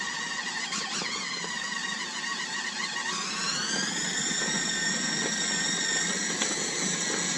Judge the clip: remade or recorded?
recorded